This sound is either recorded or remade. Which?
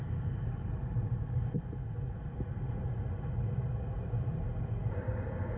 recorded